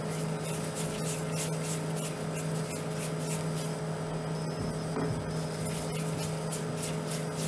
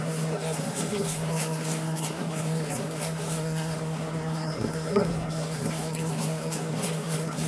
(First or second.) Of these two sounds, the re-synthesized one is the second